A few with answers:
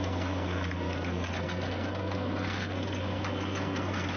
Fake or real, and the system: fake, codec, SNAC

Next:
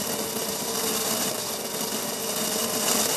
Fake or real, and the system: real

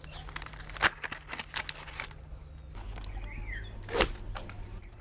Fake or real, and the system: real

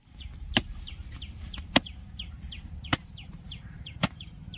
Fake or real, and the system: fake, vocoder, BigVGAN v2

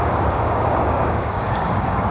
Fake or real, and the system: fake, codec, DAC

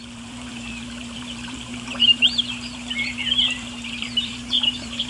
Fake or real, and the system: fake, vocoder, BigVGAN v2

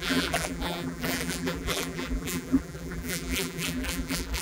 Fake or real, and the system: fake, vocoder, BigVGAN v2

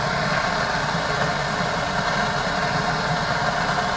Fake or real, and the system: real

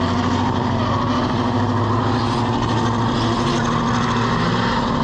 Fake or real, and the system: real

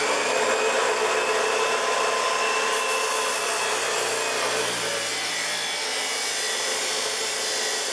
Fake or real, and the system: real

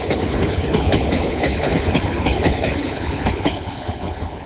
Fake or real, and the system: fake, codec, HILCodec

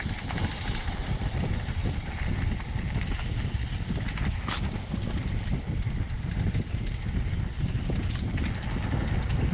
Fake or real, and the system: real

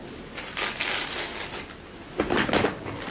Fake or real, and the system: real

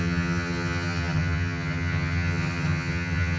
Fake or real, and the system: fake, vocoder, HiFi-GAN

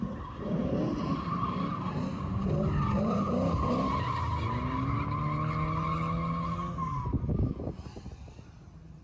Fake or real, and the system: real